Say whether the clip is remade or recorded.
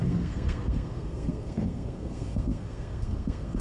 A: remade